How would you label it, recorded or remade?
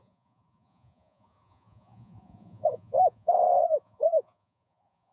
remade